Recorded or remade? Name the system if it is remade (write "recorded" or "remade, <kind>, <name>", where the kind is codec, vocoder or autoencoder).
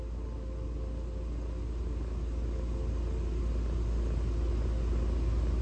recorded